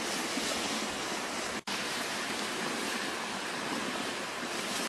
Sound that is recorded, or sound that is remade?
recorded